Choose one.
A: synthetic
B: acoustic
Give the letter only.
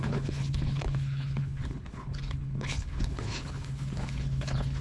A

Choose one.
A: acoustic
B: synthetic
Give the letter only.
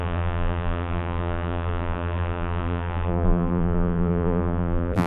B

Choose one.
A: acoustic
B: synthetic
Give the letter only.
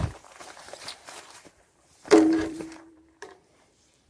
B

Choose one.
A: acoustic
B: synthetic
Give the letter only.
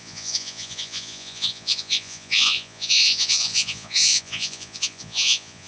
B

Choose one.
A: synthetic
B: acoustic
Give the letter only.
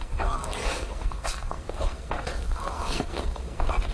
A